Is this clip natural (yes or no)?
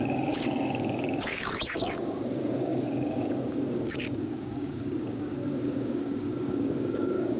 no